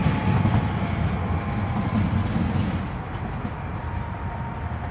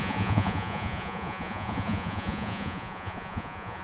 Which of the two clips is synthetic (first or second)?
second